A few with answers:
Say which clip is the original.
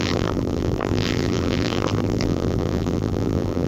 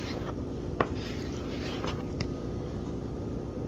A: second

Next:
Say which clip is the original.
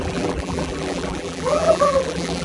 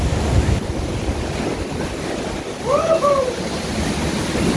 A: second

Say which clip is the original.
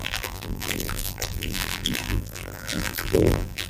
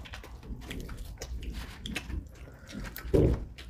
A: second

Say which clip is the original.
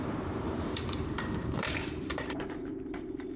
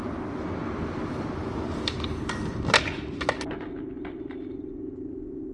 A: second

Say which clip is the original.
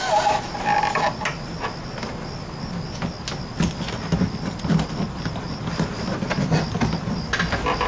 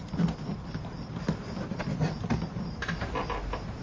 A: first